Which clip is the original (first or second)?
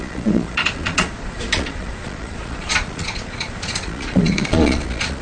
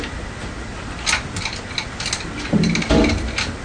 second